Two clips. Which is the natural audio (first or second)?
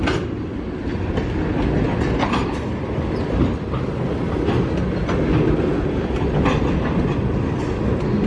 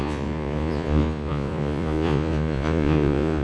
first